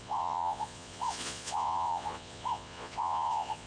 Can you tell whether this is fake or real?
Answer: fake